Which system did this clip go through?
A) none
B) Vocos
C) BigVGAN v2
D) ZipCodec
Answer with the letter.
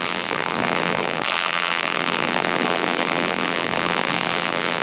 C